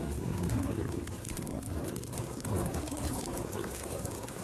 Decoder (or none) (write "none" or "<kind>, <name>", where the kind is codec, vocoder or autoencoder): codec, SNAC